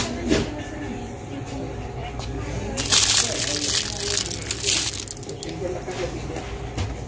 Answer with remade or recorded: recorded